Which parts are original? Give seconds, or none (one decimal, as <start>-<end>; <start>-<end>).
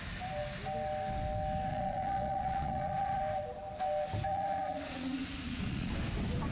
0.0-1.7; 3.2-4.3; 5.9-6.5